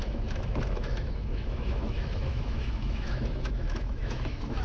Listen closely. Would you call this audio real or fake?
fake